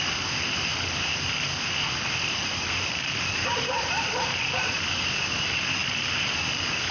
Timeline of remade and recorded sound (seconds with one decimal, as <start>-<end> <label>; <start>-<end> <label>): 0.0-6.9 recorded